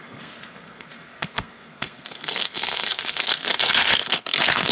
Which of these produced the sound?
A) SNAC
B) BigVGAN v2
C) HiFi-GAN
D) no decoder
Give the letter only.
A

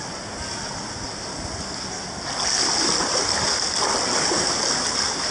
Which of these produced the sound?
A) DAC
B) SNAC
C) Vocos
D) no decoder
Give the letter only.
D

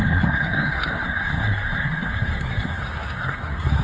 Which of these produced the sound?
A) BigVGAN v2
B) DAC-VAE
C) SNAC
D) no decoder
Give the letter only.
C